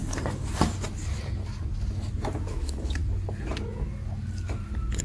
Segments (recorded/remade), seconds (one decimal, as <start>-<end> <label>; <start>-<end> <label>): 0.0-2.5 recorded; 2.5-3.0 remade; 3.0-5.0 recorded